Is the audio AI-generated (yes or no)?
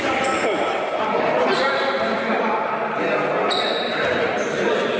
no